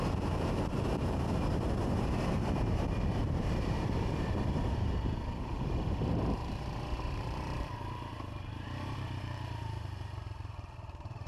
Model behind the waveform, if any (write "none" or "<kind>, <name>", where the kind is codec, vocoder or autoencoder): vocoder, BigVGAN v2